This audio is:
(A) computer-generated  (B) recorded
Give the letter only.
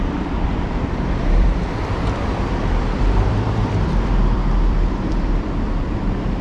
A